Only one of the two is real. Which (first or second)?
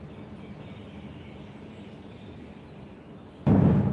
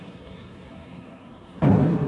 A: first